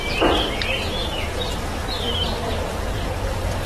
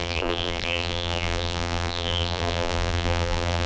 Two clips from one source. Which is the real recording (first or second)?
first